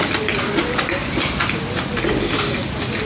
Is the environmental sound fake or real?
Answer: real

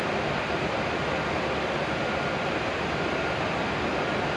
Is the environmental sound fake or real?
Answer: real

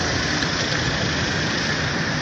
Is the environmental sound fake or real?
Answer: real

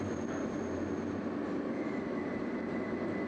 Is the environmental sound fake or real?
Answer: real